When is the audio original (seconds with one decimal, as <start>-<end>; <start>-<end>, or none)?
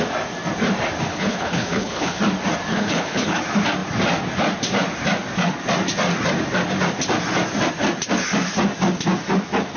0.0-1.1; 2.2-2.7; 3.4-9.8